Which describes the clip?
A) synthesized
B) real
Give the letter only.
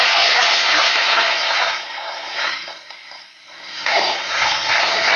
A